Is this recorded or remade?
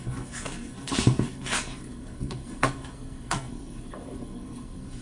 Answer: remade